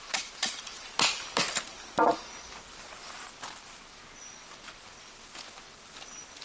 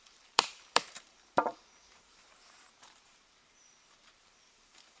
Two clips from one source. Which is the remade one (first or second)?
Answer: second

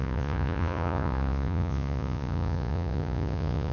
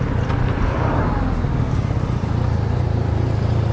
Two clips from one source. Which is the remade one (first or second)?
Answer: first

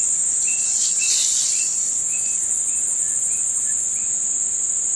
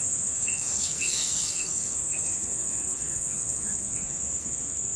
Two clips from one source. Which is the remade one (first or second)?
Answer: second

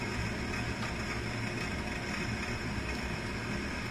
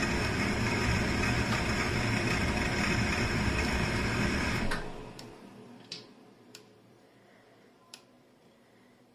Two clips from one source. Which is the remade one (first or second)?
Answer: second